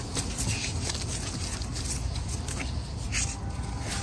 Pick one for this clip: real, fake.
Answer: real